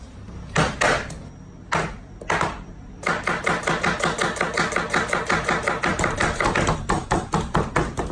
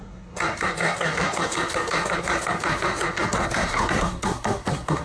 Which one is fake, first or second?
second